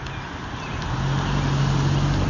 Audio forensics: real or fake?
real